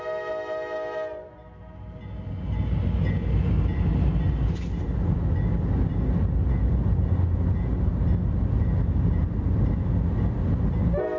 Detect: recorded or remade recorded